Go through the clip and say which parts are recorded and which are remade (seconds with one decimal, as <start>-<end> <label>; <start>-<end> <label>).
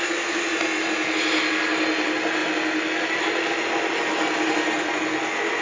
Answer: 0.0-5.6 recorded